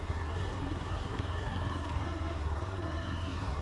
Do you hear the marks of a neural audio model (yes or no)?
yes